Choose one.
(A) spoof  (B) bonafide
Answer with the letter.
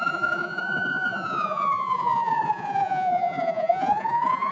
A